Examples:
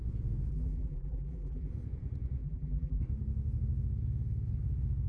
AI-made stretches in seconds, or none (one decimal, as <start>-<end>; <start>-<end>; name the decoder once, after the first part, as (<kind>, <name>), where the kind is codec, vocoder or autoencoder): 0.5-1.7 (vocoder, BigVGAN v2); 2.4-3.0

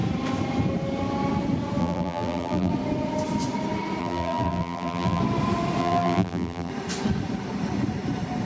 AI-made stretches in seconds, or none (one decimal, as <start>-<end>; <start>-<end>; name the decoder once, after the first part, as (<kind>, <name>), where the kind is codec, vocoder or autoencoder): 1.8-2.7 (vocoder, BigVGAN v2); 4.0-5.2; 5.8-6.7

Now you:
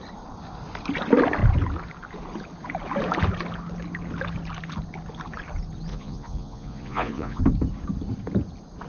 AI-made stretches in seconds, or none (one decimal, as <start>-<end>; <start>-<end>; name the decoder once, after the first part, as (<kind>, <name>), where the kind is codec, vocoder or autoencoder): 5.9-7.4 (vocoder, Vocos)

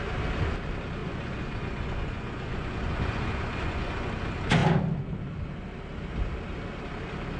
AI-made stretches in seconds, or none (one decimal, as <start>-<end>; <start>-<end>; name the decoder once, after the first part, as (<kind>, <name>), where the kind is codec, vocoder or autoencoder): 1.0-4.1 (vocoder, Vocos)

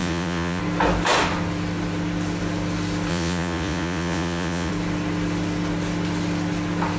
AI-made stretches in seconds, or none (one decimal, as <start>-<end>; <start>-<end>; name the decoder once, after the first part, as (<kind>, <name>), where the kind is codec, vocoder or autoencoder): 0.0-0.6 (vocoder, Vocos); 3.1-4.7